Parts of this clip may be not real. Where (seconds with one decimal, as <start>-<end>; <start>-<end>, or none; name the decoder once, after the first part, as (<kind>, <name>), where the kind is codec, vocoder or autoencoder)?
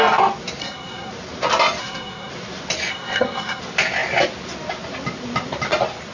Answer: 0.6-1.1 (codec, SNAC); 1.8-2.3; 2.9-3.6